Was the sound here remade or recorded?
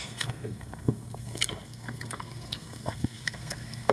remade